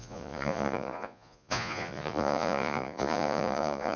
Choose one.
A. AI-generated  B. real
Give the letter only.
A